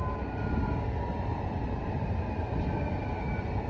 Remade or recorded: recorded